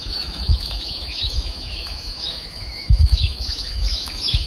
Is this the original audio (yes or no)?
no